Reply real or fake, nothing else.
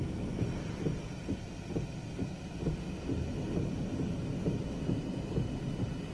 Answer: real